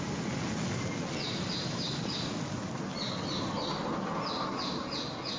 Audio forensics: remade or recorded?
recorded